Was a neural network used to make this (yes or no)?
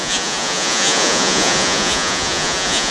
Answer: yes